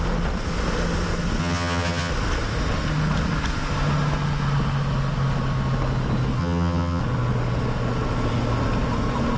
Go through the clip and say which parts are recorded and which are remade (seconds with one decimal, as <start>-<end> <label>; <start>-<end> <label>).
0.0-1.4 recorded; 1.4-2.1 remade; 2.1-6.4 recorded; 6.4-7.0 remade; 7.0-9.4 recorded